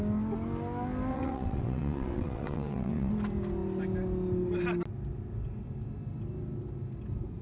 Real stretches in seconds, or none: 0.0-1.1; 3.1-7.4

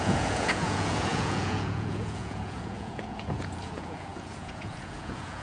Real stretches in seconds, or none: none